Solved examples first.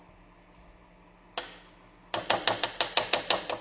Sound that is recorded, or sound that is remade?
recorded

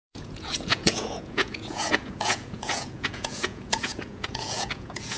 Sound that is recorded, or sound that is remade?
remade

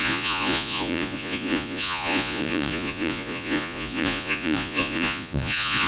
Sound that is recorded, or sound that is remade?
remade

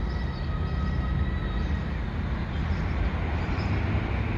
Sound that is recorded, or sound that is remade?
recorded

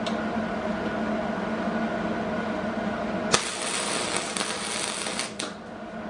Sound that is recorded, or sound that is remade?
recorded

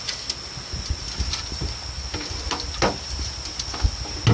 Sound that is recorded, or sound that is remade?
recorded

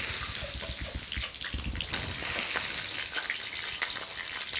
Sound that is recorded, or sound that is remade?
recorded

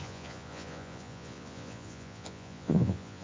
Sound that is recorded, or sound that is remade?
remade